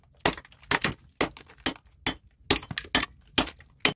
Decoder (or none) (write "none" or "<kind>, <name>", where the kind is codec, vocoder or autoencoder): none